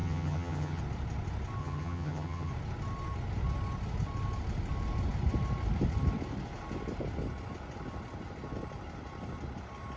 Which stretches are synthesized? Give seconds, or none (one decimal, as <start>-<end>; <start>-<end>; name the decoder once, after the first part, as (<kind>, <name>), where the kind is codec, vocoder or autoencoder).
0.0-0.8 (vocoder, HiFi-GAN); 1.6-2.5